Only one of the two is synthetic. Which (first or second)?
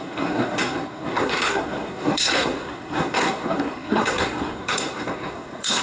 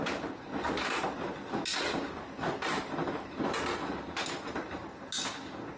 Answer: first